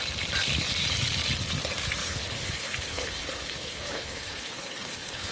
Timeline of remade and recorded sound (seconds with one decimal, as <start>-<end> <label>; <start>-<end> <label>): 0.0-2.0 recorded; 2.0-5.3 remade